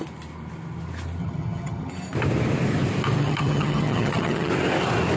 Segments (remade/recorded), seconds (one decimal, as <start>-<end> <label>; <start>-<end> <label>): 0.0-1.2 recorded; 1.2-1.9 remade; 1.9-3.2 recorded; 3.2-4.5 remade; 4.5-5.2 recorded